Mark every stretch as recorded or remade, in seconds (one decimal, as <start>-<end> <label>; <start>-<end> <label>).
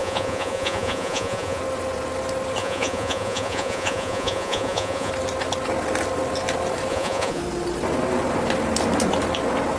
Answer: 0.0-1.6 remade; 1.6-2.6 recorded; 2.6-5.1 remade; 5.1-6.9 recorded; 6.9-7.4 remade; 7.4-9.8 recorded